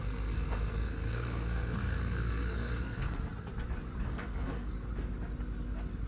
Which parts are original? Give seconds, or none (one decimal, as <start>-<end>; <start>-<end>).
3.1-4.1; 4.7-6.1